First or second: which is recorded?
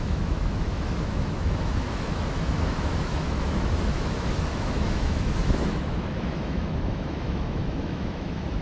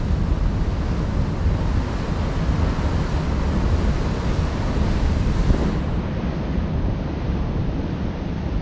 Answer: second